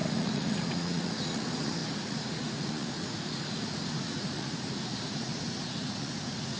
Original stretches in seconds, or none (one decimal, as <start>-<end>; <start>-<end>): none